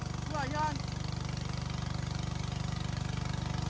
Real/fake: real